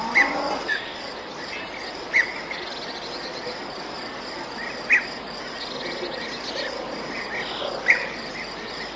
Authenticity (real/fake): real